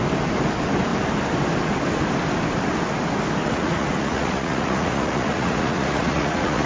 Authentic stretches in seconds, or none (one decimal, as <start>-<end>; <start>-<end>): 0.0-3.4